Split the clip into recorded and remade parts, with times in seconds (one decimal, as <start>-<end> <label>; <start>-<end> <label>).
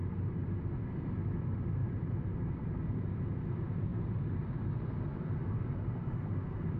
0.0-6.8 recorded